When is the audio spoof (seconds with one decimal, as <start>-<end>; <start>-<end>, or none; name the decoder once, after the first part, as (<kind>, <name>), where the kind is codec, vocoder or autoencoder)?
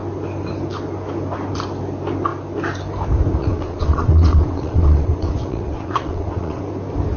3.4-6.6 (vocoder, WaveNeXt)